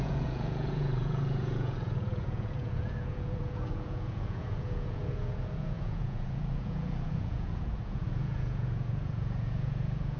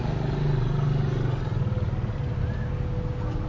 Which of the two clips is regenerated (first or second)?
first